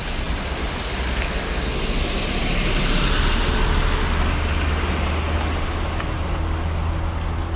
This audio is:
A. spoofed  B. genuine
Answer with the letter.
B